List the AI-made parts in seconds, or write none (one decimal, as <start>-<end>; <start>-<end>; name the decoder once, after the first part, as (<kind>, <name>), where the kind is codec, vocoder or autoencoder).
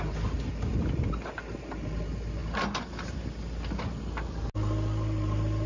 none